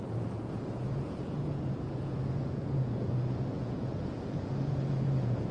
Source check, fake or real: fake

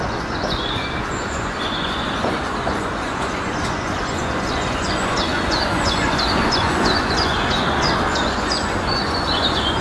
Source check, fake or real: fake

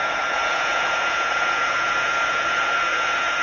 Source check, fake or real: fake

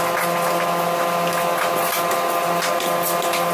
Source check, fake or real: real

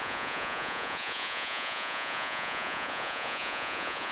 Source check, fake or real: fake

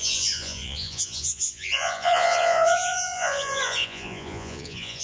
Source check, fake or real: fake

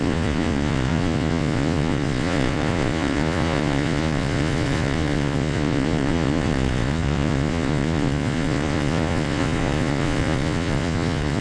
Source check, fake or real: fake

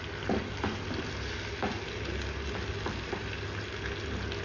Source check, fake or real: real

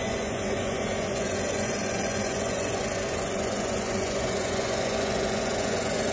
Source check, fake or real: fake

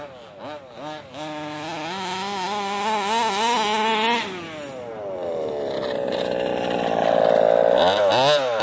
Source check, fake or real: real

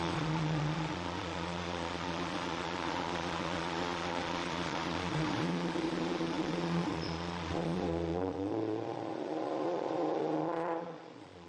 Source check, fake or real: fake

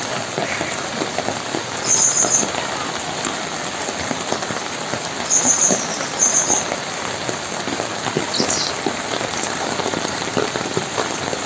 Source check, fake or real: real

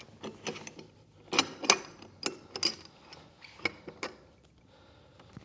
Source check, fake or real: real